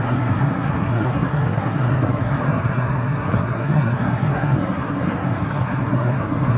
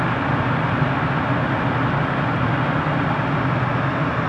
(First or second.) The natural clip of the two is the second